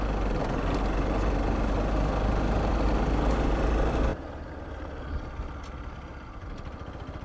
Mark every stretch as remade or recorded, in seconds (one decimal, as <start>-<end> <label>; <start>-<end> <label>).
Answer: 0.0-4.1 recorded; 4.1-4.7 remade; 4.7-7.2 recorded